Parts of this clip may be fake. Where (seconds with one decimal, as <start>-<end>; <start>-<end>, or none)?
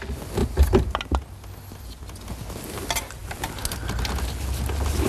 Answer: 0.4-1.0